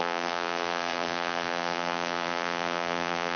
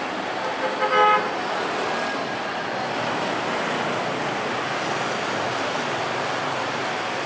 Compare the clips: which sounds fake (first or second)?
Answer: first